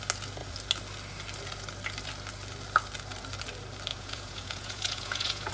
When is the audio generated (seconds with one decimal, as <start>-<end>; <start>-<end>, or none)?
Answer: 3.9-5.5